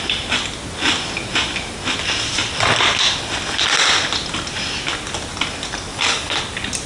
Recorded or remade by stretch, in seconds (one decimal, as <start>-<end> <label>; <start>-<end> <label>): 0.0-5.9 recorded; 5.9-6.4 remade; 6.4-6.9 recorded